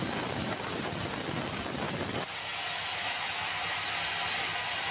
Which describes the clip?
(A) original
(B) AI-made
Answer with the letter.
A